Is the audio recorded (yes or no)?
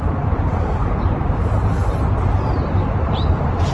no